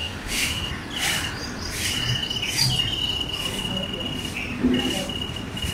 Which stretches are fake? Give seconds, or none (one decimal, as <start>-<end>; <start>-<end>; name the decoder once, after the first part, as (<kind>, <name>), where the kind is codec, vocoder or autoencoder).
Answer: 0.0-0.7 (autoencoder, DAC-VAE)